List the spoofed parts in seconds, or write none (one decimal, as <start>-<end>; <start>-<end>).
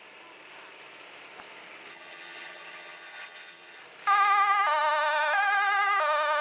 1.9-3.8